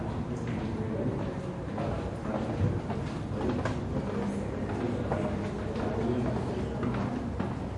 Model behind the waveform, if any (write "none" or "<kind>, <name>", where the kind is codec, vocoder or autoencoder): none